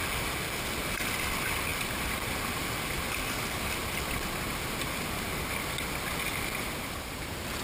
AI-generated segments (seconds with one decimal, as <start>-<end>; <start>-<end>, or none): none